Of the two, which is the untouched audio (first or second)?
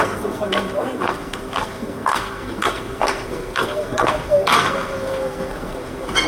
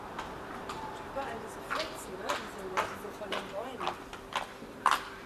second